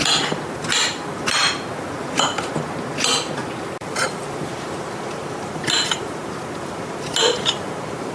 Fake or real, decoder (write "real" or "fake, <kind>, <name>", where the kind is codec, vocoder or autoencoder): real